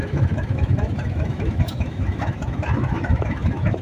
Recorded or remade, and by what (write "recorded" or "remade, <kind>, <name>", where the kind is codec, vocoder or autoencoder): remade, autoencoder, DAC-VAE